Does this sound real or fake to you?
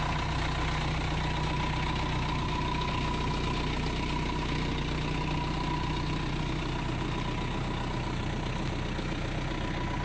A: real